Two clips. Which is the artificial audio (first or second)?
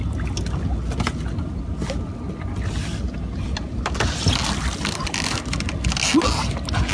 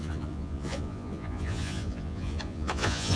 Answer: second